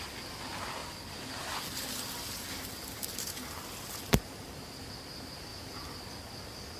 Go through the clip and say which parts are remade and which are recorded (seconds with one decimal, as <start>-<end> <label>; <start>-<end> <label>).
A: 0.0-0.8 recorded; 0.8-4.9 remade; 4.9-5.5 recorded; 5.5-6.1 remade; 6.1-6.8 recorded